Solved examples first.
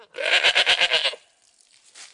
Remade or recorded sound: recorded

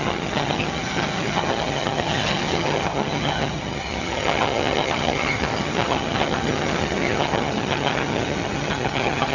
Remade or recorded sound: remade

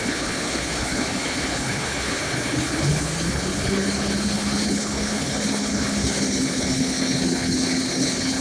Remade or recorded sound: remade